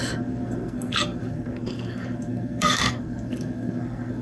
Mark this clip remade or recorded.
remade